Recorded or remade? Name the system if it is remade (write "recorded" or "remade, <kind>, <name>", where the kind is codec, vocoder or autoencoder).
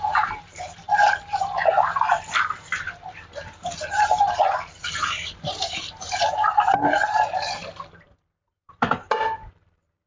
remade, vocoder, BigVGAN v2